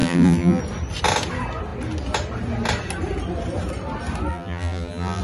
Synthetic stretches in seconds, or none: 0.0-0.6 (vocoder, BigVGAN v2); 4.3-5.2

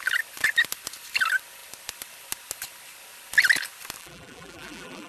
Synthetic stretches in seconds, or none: 4.0-5.1 (vocoder, BigVGAN v2)

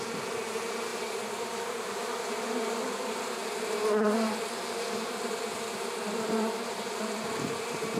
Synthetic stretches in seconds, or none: 0.0-8.0 (vocoder, BigVGAN v2)

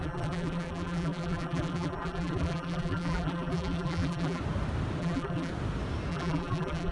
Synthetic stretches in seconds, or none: 0.0-4.4 (vocoder, BigVGAN v2); 5.0-5.5; 6.1-6.9

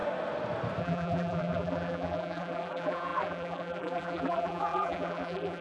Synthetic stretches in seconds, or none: 0.8-5.6 (vocoder, BigVGAN v2)